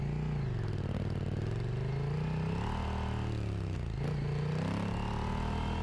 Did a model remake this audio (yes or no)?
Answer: no